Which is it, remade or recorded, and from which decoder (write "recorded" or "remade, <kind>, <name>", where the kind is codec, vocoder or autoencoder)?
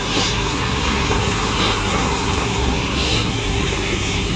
remade, codec, SNAC